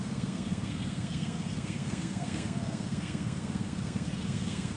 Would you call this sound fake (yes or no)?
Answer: yes